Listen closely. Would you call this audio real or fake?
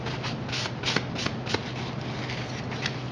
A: real